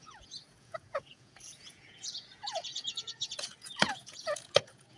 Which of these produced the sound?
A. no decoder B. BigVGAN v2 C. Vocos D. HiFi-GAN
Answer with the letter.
C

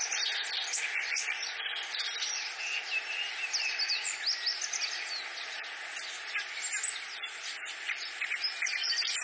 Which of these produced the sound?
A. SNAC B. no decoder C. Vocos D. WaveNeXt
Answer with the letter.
B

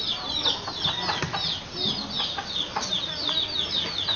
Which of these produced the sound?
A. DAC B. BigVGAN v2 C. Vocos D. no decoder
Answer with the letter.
D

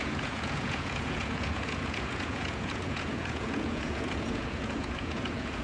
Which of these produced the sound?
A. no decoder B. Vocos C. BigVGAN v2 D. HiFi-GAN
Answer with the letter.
B